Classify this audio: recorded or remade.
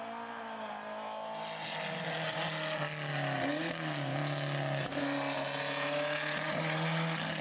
recorded